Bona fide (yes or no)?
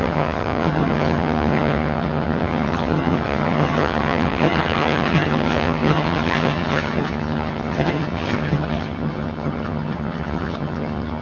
no